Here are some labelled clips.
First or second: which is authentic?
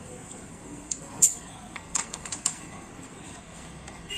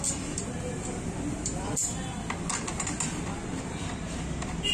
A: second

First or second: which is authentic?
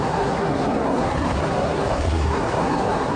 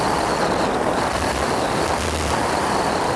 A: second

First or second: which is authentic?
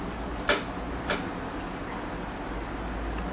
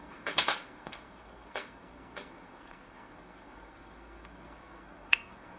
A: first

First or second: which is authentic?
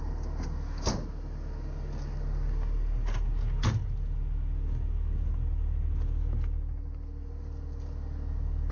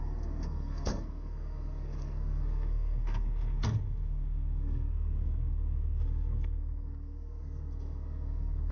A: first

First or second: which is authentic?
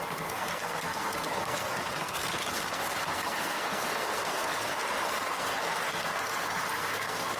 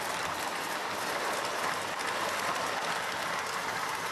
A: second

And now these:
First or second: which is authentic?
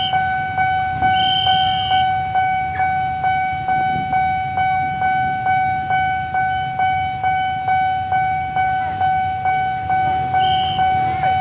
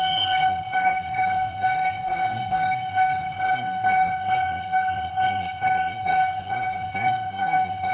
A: first